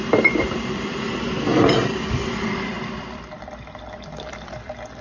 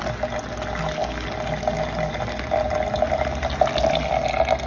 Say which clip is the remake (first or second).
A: first